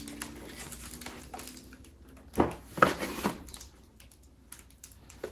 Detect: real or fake real